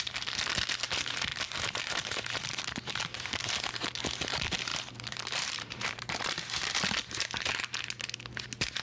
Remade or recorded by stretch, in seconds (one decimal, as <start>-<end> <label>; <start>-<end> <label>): 0.0-1.3 recorded; 1.3-3.2 remade; 3.2-4.7 recorded; 4.7-6.6 remade; 6.6-8.8 recorded